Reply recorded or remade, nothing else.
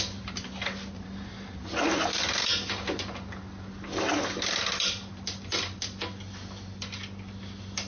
recorded